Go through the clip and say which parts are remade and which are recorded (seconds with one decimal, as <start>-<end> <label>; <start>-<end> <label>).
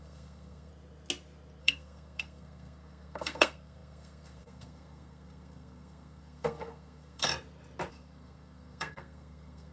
0.0-0.7 remade; 0.7-1.6 recorded; 1.6-7.3 remade; 7.3-7.9 recorded; 7.9-9.7 remade